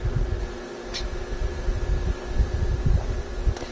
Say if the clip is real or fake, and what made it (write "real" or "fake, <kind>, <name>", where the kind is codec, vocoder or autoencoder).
real